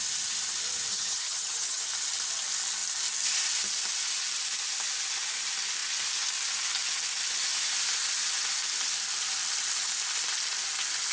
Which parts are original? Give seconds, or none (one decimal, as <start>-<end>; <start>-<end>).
0.0-0.9; 1.8-11.1